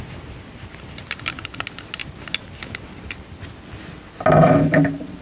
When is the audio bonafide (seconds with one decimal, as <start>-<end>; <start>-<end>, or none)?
0.0-5.2